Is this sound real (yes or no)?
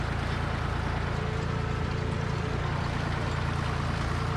yes